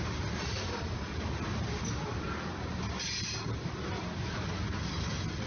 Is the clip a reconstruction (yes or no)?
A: no